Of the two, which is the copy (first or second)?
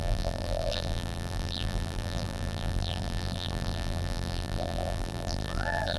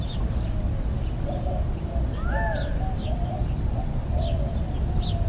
first